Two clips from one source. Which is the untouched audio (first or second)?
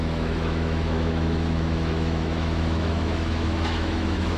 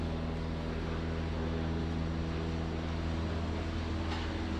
second